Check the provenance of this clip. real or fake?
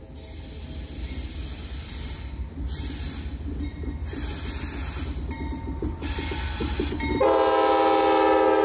real